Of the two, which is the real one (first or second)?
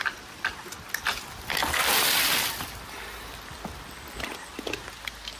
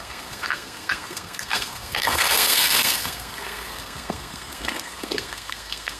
first